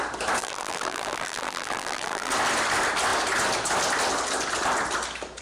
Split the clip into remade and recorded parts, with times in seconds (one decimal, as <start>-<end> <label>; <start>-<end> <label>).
0.0-0.4 recorded; 0.4-2.3 remade; 2.3-5.4 recorded